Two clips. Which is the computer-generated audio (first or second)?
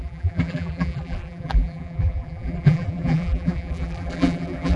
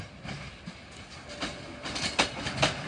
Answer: first